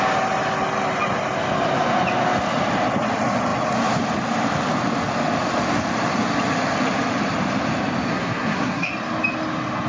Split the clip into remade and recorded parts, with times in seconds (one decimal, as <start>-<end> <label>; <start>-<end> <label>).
0.0-8.1 recorded; 8.1-8.9 remade; 8.9-9.9 recorded